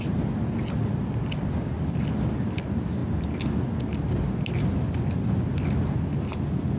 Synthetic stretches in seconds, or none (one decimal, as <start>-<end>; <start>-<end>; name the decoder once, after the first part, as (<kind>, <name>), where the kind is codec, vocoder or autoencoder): none